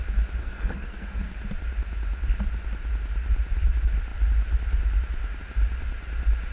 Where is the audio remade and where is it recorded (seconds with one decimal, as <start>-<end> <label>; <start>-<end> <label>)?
0.0-0.4 recorded; 0.4-1.2 remade; 1.2-6.5 recorded